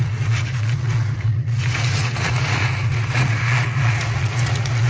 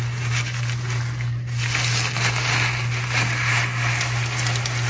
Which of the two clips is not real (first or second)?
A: first